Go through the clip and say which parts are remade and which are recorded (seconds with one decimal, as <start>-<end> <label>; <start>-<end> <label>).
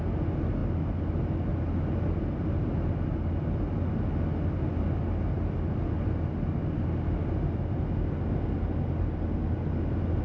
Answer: 0.0-10.2 recorded